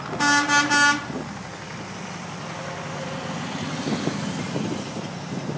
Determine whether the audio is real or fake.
real